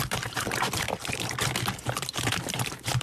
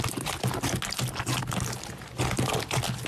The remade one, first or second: first